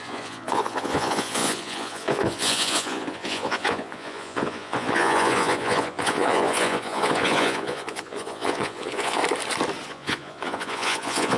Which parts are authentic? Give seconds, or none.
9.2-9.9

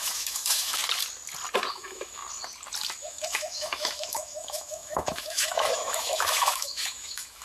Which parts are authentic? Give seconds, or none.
0.8-1.7; 2.2-3.0

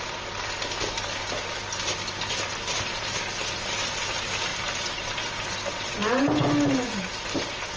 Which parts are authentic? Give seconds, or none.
0.0-7.8